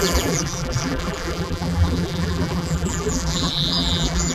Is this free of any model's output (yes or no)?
no